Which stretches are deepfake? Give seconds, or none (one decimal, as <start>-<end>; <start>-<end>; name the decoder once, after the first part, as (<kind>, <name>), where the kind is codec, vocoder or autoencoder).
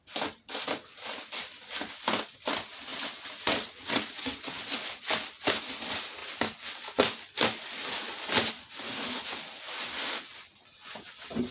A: 2.9-4.7 (vocoder, WaveNeXt)